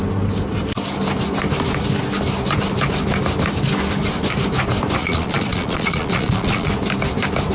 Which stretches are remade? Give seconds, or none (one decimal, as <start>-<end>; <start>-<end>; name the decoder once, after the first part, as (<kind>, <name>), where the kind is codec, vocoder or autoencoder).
5.0-6.7 (vocoder, Vocos)